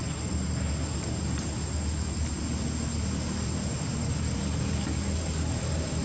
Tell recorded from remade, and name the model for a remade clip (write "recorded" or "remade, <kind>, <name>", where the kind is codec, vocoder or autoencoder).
recorded